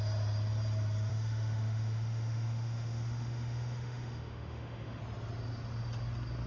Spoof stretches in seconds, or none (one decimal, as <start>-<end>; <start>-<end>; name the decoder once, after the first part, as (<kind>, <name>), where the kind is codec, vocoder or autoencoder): 1.1-5.0 (autoencoder, DAC-VAE)